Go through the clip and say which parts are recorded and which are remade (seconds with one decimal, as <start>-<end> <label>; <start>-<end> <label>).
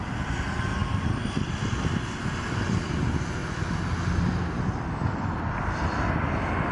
0.0-6.7 recorded